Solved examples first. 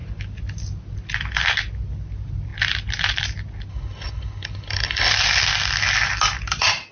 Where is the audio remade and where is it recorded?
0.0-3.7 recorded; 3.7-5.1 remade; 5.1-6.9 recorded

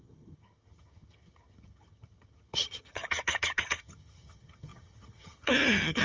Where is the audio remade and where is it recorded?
0.0-6.0 remade